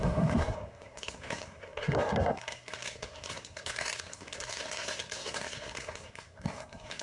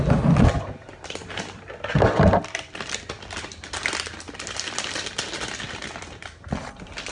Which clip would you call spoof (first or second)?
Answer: first